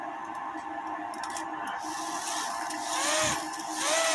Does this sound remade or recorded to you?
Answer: recorded